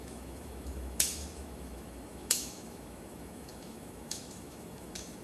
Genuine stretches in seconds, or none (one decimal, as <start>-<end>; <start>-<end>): none